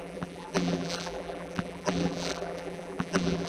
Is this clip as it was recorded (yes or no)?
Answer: no